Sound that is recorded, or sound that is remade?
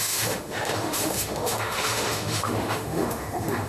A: remade